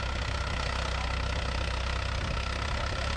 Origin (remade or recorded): recorded